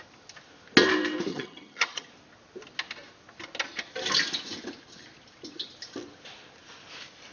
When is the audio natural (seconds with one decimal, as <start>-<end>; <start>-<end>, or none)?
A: 0.0-1.3; 2.1-7.3